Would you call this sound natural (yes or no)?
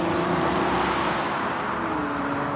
yes